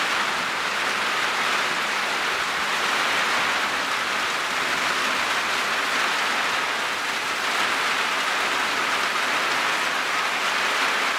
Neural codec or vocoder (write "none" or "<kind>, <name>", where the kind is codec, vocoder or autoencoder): none